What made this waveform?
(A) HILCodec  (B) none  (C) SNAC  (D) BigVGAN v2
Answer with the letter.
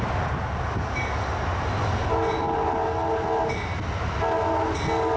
B